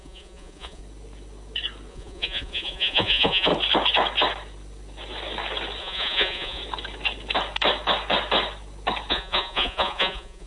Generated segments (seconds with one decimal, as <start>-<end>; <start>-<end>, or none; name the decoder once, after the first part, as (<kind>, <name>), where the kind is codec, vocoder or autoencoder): 0.0-0.8 (vocoder, Vocos); 1.9-3.5; 5.8-6.6; 9.1-10.5

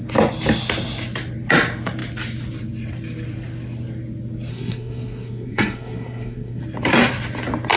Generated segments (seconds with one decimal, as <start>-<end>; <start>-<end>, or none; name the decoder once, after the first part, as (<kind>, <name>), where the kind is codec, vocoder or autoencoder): 4.5-6.6 (codec, SNAC)

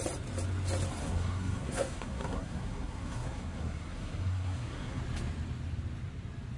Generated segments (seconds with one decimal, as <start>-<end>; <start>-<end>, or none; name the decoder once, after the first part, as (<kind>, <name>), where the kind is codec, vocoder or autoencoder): 1.0-5.0 (codec, SNAC)

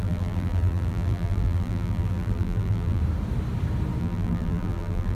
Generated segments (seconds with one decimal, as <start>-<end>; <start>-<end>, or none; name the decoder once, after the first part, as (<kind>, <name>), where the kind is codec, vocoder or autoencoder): 0.0-3.0 (vocoder, BigVGAN v2); 4.0-5.1

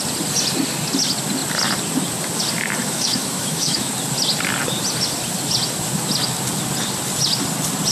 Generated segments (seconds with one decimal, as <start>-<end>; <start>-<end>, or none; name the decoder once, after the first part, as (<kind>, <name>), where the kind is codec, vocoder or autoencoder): 2.8-3.9 (autoencoder, DAC-VAE)

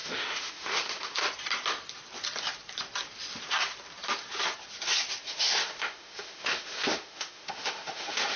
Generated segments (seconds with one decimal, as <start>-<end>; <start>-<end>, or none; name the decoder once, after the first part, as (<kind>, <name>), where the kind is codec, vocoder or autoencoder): 0.0-1.2 (autoencoder, DAC-VAE); 5.2-8.4

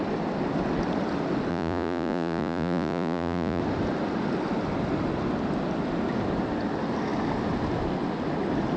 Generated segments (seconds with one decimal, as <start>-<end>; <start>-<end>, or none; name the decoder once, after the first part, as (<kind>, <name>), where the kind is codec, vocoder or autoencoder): 1.5-3.6 (vocoder, Vocos)